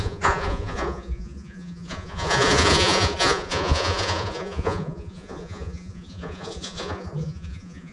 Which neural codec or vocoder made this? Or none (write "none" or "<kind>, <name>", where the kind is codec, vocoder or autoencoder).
vocoder, Vocos